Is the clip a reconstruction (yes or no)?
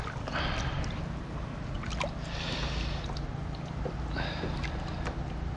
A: no